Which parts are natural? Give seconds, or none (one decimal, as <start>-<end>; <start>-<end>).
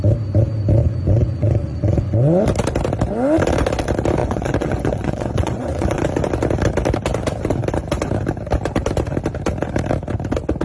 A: 0.0-0.8; 2.4-4.2; 6.0-10.6